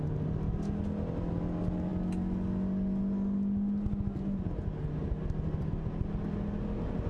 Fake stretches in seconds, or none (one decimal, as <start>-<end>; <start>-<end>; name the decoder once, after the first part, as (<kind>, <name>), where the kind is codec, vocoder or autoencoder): none